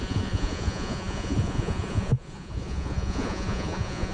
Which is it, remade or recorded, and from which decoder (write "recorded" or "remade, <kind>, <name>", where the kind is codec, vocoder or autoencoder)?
remade, vocoder, Vocos